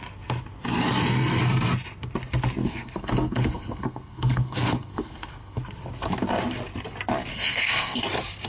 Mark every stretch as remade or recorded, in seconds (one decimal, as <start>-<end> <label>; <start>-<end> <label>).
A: 0.0-2.6 recorded; 2.6-5.6 remade; 5.6-7.3 recorded; 7.3-8.0 remade; 8.0-8.5 recorded